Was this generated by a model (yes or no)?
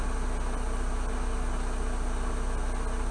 no